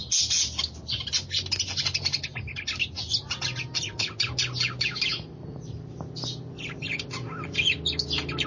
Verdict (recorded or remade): recorded